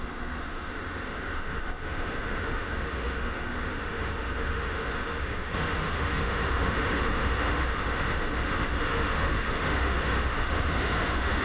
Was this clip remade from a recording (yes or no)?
yes